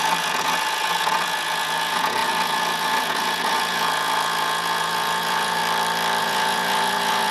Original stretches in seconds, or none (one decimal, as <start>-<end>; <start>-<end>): 5.6-6.2